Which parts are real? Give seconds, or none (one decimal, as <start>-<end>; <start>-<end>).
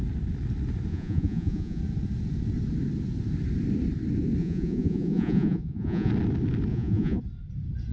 0.0-0.9; 1.8-4.4; 6.1-6.7; 7.2-7.9